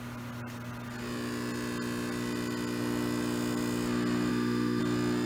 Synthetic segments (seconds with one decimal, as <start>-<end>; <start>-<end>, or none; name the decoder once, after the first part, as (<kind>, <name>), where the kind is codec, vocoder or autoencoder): 4.3-4.8 (autoencoder, DAC-VAE)